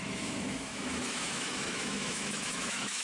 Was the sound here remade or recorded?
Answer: remade